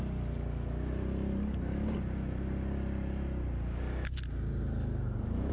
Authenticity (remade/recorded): recorded